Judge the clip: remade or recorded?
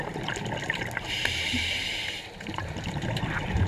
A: recorded